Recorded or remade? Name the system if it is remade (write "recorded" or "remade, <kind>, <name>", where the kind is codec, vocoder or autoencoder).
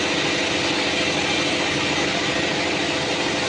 recorded